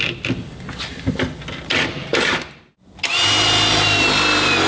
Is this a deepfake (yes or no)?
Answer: no